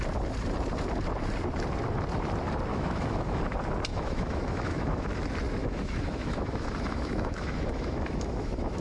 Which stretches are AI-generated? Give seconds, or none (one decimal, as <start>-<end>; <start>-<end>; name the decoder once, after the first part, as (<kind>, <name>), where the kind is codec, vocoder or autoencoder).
2.7-3.4 (autoencoder, DAC-VAE); 3.9-5.1; 5.6-8.8